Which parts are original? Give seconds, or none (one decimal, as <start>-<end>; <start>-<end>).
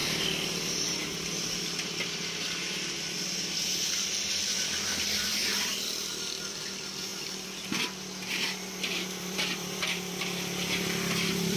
0.0-4.3; 5.4-6.1; 7.1-8.9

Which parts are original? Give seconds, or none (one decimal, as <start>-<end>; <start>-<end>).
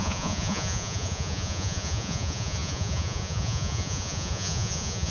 none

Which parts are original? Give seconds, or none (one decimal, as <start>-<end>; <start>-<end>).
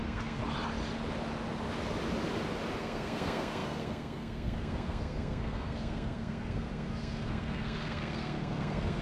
0.4-2.8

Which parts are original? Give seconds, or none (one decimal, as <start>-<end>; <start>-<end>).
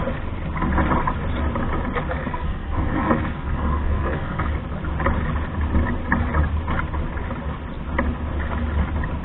0.0-2.2; 4.5-9.2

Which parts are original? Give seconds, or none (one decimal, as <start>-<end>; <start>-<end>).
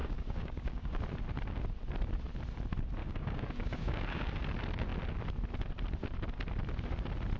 1.0-3.0; 4.4-7.4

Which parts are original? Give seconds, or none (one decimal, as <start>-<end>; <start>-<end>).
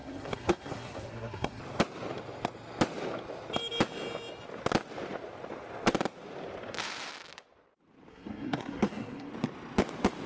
1.6-8.1; 9.3-10.3